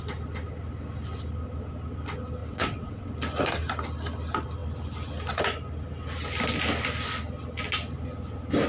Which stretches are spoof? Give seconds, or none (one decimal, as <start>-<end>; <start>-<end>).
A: 2.4-3.1